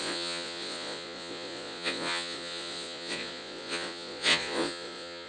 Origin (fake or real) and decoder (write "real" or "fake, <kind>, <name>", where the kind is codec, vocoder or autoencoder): fake, vocoder, Vocos